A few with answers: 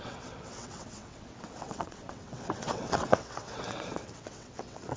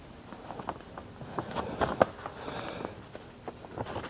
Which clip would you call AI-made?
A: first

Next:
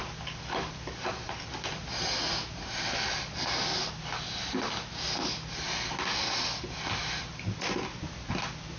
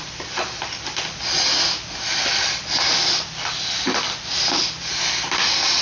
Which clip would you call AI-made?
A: second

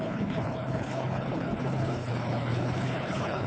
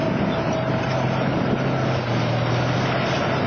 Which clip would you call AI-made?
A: first